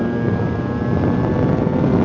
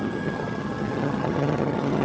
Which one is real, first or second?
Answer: first